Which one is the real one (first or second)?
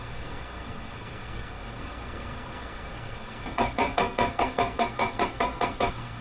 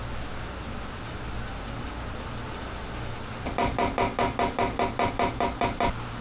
second